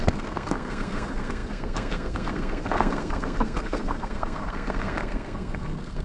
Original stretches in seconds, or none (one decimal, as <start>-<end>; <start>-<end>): none